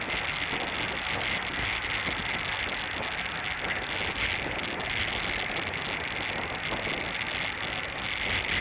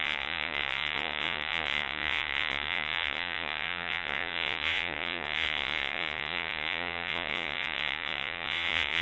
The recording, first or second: first